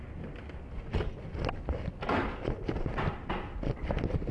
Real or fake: real